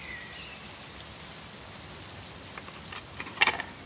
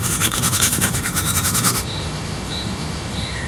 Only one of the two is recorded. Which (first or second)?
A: first